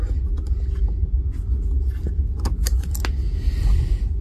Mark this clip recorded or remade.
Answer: recorded